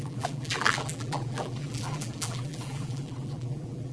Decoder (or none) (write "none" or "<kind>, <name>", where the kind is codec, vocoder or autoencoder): vocoder, BigVGAN v2